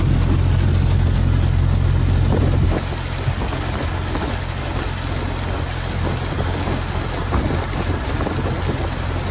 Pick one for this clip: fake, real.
real